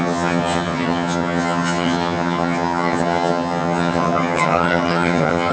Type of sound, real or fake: fake